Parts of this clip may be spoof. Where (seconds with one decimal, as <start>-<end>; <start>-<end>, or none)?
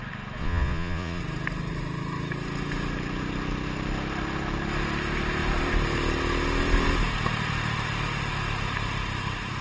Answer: 0.4-1.2